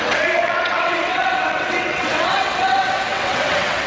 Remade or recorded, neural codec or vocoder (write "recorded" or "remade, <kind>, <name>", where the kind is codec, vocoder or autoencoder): remade, vocoder, WaveNeXt